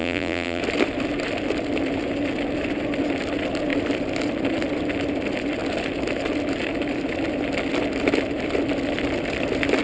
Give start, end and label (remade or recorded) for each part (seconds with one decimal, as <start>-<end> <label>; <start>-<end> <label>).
0.0-0.6 remade; 0.6-9.8 recorded